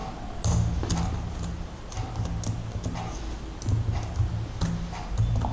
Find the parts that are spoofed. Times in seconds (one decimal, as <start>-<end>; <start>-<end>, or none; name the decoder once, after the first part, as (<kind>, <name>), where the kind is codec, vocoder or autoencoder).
none